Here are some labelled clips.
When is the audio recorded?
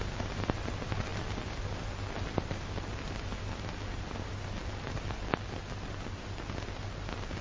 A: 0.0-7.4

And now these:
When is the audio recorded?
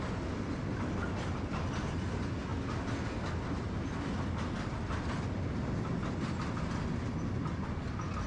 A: 0.0-8.3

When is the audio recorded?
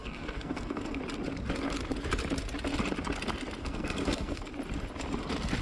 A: 1.0-3.6; 4.5-5.6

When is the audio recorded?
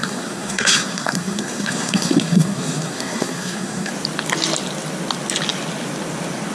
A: 3.9-6.5